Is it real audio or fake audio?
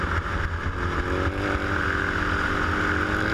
real